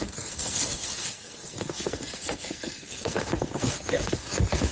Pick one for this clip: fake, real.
fake